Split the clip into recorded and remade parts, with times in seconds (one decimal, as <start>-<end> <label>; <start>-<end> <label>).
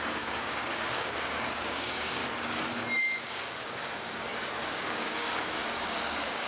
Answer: 0.0-2.2 remade; 2.2-3.0 recorded; 3.0-6.5 remade